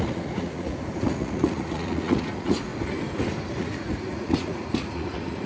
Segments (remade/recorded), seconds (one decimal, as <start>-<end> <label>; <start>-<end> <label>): 0.0-2.7 remade; 2.7-3.6 recorded; 3.6-5.5 remade